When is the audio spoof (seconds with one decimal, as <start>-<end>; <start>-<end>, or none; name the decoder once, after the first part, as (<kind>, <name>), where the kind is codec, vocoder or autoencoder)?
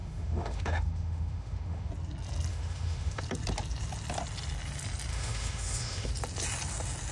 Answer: 0.0-1.9 (autoencoder, DAC-VAE); 2.5-3.2; 5.1-6.1